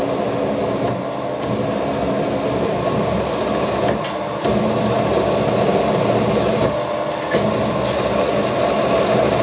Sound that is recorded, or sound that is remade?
recorded